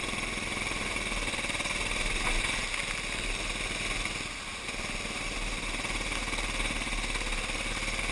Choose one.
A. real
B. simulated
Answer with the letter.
A